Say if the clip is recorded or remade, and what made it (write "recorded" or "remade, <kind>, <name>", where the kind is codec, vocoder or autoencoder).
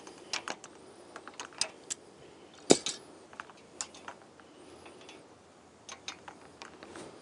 recorded